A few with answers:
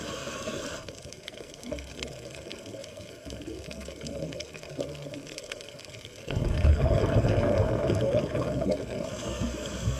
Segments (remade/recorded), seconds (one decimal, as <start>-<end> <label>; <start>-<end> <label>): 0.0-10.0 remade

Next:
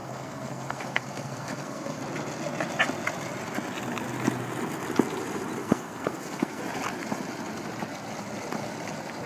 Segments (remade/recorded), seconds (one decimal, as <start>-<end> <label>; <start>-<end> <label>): 0.0-2.0 remade; 2.0-5.6 recorded; 5.6-6.6 remade; 6.6-9.3 recorded

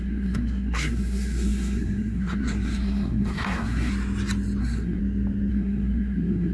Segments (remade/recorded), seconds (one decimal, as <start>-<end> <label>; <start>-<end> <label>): 0.0-3.9 remade; 3.9-4.6 recorded; 4.6-5.0 remade; 5.0-5.5 recorded; 5.5-6.5 remade

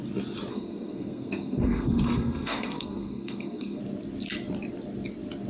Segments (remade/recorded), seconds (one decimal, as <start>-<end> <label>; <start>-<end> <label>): 0.0-0.5 recorded; 0.5-3.8 remade; 3.8-5.5 recorded